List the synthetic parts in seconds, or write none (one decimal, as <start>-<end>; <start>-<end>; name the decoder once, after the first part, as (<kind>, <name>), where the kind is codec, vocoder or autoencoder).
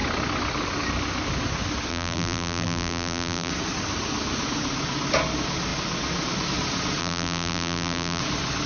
1.9-3.5 (vocoder, BigVGAN v2); 7.0-8.2